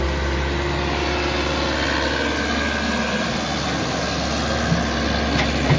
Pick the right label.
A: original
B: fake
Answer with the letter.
A